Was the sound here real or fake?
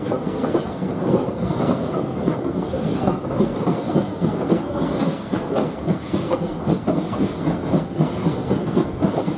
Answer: fake